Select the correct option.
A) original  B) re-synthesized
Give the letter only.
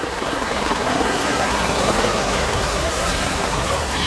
B